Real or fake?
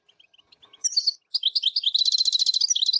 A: real